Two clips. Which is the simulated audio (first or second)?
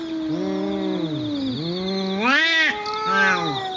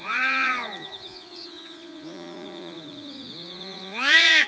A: second